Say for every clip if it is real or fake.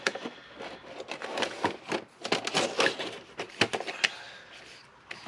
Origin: real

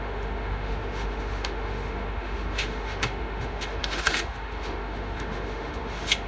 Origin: fake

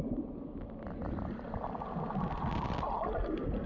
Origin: real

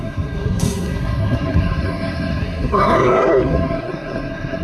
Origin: fake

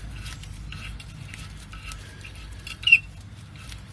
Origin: real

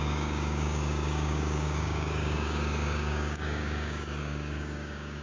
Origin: fake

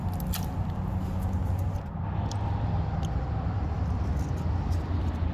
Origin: real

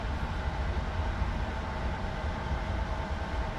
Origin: real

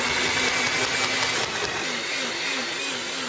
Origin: real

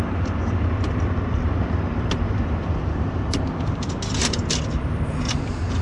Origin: fake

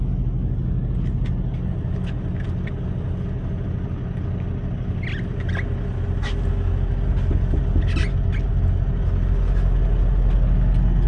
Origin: real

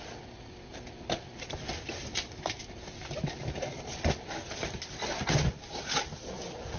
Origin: real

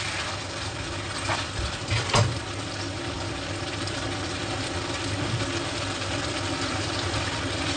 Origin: fake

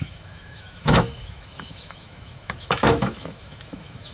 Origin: fake